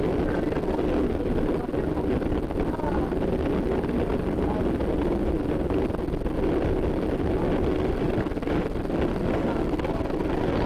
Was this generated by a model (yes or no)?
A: no